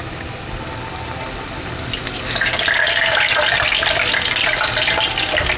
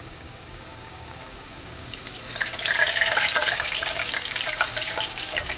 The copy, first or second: second